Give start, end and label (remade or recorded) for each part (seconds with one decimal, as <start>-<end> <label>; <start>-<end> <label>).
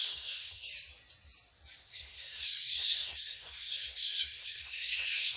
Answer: 0.0-0.7 remade; 0.7-1.9 recorded; 1.9-5.4 remade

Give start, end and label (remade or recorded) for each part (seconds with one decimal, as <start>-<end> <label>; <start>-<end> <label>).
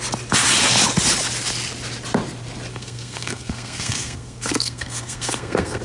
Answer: 0.0-2.7 recorded; 2.7-5.8 remade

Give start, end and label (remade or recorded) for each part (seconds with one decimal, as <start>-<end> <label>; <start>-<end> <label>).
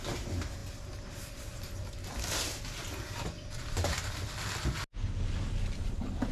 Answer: 0.0-6.3 recorded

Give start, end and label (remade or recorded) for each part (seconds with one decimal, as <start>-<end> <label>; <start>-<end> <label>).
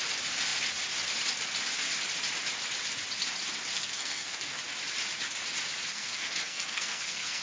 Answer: 0.0-3.7 recorded; 3.7-4.5 remade; 4.5-5.9 recorded; 5.9-7.4 remade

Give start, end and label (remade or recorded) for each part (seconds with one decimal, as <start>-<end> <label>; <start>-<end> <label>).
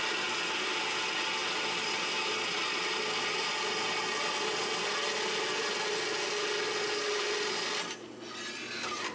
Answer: 0.0-9.1 recorded